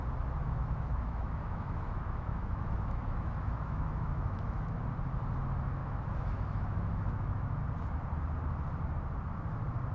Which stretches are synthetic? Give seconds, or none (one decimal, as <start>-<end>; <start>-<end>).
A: 0.4-4.8; 5.8-7.6